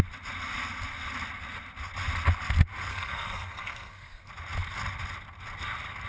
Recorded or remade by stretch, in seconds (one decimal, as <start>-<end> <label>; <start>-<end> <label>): 0.0-2.9 recorded; 2.9-4.3 remade; 4.3-6.1 recorded